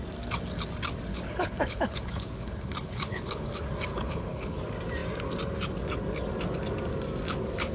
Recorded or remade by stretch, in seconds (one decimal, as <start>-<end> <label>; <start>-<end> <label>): 0.0-1.1 recorded; 1.1-3.5 remade; 3.5-3.9 recorded; 3.9-4.6 remade; 4.6-7.7 recorded